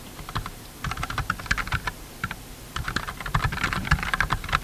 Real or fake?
real